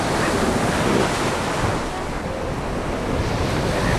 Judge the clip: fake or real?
real